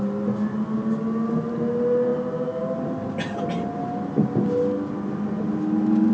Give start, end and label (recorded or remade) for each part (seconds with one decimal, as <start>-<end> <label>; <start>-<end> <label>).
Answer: 0.0-6.1 recorded